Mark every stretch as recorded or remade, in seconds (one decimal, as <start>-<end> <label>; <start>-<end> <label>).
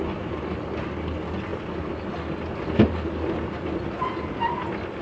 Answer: 0.0-5.0 recorded